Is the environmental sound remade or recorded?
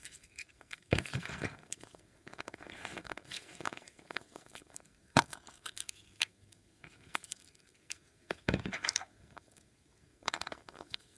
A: remade